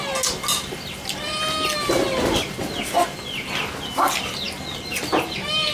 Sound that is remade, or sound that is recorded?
recorded